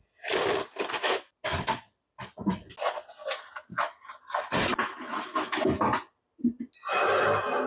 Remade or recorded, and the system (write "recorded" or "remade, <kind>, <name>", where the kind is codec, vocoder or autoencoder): recorded